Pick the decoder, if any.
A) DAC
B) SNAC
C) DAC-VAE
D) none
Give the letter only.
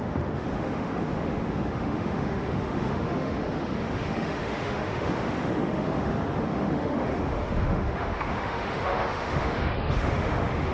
C